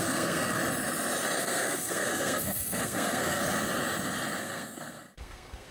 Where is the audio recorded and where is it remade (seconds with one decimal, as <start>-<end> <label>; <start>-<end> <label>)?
0.0-0.6 remade; 0.6-1.4 recorded; 1.4-3.4 remade; 3.4-4.4 recorded; 4.4-5.7 remade